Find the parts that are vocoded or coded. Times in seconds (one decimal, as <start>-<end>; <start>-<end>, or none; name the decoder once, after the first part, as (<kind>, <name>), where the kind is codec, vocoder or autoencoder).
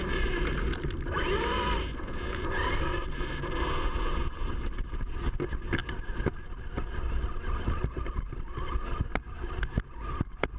none